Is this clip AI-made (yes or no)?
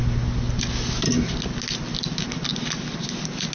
no